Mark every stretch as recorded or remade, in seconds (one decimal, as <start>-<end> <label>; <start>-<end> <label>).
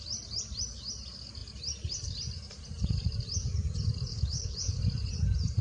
0.0-4.1 recorded; 4.1-4.8 remade; 4.8-5.6 recorded